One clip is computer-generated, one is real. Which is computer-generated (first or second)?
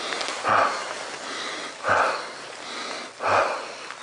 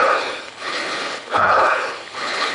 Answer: second